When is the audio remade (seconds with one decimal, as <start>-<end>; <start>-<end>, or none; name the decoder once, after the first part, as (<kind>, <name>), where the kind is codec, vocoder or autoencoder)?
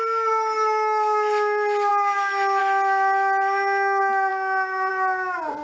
none